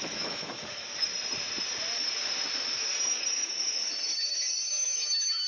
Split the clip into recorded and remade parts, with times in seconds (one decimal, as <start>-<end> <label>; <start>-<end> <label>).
0.0-1.1 remade; 1.1-3.1 recorded; 3.1-4.1 remade; 4.1-4.7 recorded; 4.7-5.5 remade